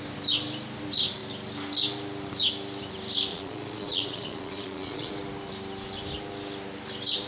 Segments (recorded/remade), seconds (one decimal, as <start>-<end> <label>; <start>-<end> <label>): 0.0-3.3 recorded; 3.3-5.1 remade; 5.1-7.3 recorded